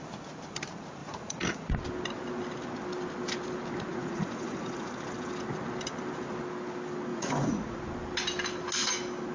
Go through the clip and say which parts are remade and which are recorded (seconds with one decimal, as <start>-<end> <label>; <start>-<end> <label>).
0.0-1.0 recorded; 1.0-1.8 remade; 1.8-3.9 recorded; 3.9-5.0 remade; 5.0-7.1 recorded; 7.1-7.9 remade; 7.9-9.3 recorded